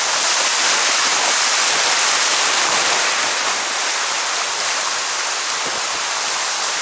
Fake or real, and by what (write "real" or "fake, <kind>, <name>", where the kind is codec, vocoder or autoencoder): real